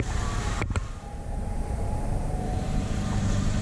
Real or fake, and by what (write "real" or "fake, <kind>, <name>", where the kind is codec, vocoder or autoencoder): fake, vocoder, BigVGAN v2